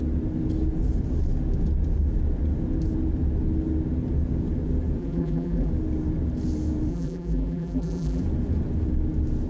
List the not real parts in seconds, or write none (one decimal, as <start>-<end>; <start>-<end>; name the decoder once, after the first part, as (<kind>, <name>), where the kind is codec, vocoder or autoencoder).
5.0-5.7 (vocoder, BigVGAN v2); 6.9-8.2